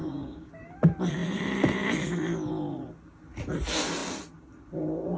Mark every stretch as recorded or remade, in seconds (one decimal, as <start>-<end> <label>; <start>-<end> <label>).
0.0-0.5 remade; 0.5-5.2 recorded